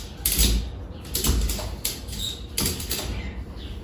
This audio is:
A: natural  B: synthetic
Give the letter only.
A